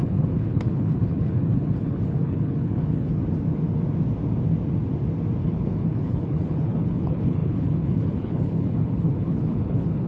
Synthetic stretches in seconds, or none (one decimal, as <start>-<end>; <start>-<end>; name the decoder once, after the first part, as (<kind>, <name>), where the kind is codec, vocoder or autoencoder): 0.0-3.2 (codec, HILCodec); 5.4-10.1